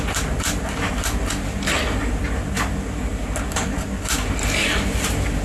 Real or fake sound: real